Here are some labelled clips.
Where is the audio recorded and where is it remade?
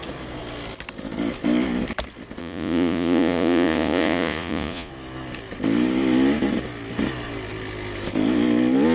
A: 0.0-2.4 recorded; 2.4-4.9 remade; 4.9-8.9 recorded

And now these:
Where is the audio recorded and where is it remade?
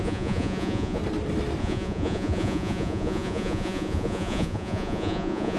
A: 0.0-1.0 remade; 1.0-1.6 recorded; 1.6-5.6 remade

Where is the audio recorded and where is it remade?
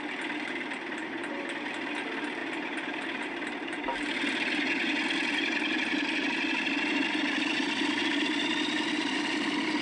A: 0.0-9.8 recorded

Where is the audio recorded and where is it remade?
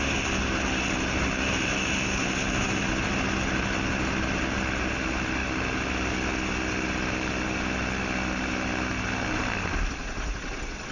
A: 0.0-10.9 recorded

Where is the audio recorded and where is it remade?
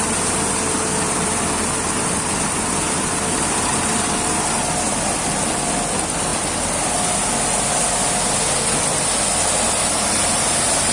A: 0.0-10.9 recorded